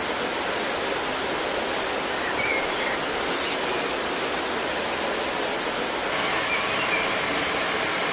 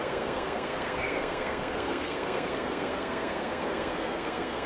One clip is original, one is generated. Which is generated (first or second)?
second